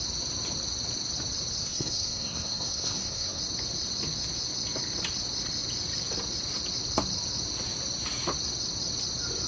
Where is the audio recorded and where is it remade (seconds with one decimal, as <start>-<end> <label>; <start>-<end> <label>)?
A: 0.0-1.6 recorded; 1.6-3.4 remade; 3.4-9.5 recorded